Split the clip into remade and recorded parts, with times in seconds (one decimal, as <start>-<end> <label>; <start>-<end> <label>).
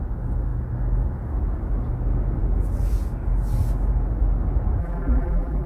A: 0.0-4.8 recorded; 4.8-5.7 remade